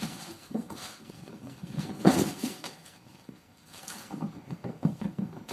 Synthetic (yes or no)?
yes